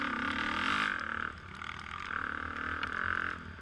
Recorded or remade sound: recorded